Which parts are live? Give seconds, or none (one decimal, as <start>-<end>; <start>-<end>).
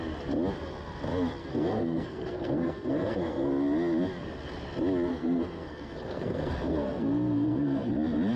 0.0-1.4; 3.5-5.1; 7.9-8.4